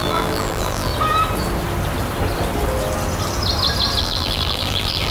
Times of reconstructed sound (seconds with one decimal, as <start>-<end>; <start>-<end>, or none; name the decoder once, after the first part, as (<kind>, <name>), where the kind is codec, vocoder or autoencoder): 0.0-0.9 (vocoder, BigVGAN v2); 4.0-5.1